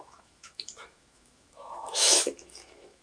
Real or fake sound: fake